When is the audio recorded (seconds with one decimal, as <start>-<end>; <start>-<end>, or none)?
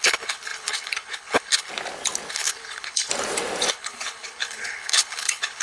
1.7-2.3; 3.1-3.7